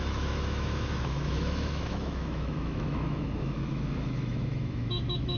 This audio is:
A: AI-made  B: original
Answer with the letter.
A